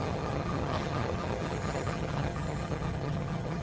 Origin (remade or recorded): remade